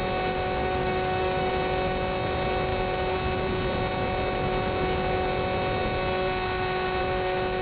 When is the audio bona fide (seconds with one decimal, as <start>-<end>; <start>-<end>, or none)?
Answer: 0.0-0.6; 1.5-7.6